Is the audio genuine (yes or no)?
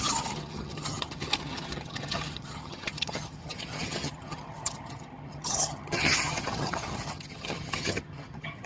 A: no